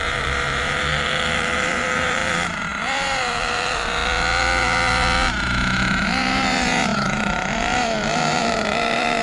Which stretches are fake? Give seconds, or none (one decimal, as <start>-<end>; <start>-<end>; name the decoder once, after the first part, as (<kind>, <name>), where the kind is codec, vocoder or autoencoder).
0.0-4.0 (vocoder, BigVGAN v2); 6.0-9.2